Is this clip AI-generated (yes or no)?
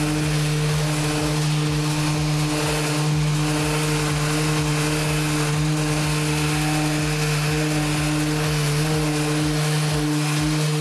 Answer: no